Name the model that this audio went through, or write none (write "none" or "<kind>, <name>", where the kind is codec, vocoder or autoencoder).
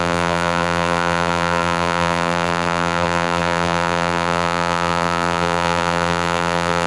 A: vocoder, BigVGAN v2